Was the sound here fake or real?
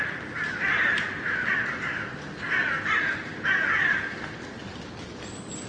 real